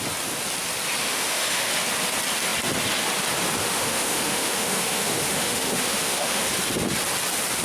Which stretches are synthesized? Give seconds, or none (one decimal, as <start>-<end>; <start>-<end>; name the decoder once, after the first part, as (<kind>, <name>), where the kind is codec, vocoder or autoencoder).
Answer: 1.0-1.7 (autoencoder, DAC-VAE); 3.6-6.5